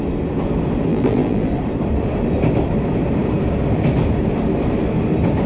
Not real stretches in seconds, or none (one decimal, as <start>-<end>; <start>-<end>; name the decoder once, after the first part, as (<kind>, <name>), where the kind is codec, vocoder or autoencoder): 0.9-1.5 (vocoder, BigVGAN v2)